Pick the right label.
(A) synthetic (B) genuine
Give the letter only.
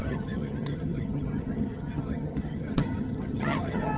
A